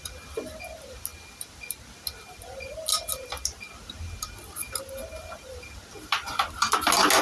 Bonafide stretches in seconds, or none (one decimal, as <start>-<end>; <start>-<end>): 0.0-7.2